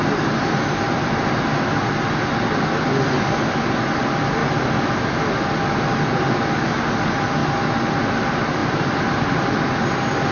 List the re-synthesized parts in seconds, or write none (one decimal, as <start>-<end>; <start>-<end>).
none